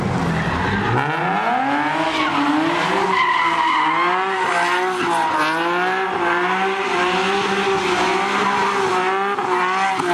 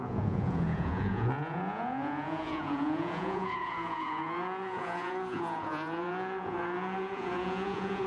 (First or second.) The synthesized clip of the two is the second